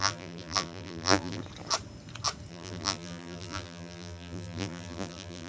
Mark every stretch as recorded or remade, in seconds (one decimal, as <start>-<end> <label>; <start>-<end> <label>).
0.0-1.4 remade; 1.4-2.5 recorded; 2.5-5.5 remade